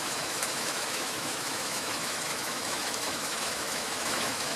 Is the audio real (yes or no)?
no